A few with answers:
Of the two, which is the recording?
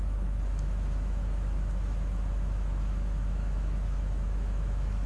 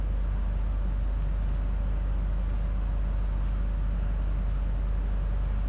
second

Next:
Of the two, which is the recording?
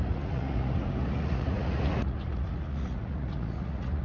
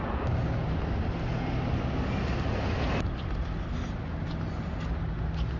second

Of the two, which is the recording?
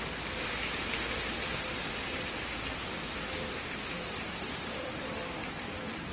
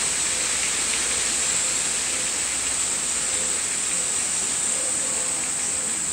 second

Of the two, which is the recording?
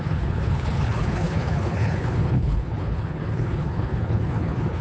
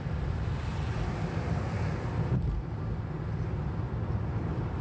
second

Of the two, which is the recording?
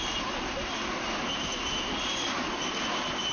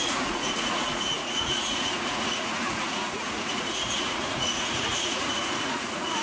first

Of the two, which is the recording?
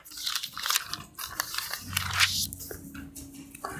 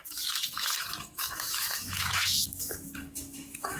first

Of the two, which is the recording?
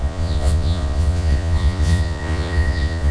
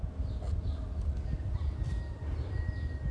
second